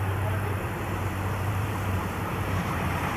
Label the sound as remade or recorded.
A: remade